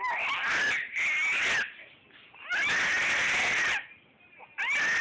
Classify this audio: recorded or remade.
recorded